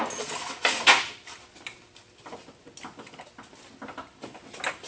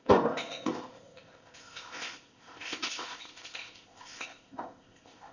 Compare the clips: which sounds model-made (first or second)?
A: second